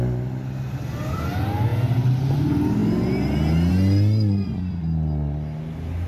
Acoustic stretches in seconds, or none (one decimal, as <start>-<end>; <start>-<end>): 0.0-6.1